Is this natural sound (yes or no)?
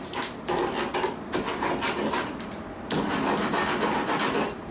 yes